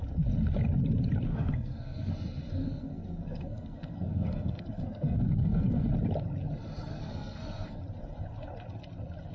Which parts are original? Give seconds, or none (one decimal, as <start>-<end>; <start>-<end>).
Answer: 0.0-1.3; 2.1-2.6; 5.9-6.9; 7.8-9.3